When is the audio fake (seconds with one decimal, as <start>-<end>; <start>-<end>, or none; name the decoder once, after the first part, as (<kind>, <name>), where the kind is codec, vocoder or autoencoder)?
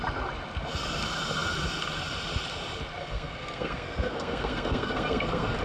3.0-5.6 (codec, SNAC)